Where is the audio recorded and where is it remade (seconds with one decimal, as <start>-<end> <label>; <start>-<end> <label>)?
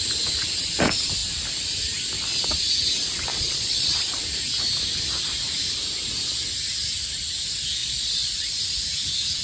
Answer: 0.0-3.3 recorded; 3.3-4.2 remade; 4.2-7.8 recorded; 7.8-8.5 remade; 8.5-9.4 recorded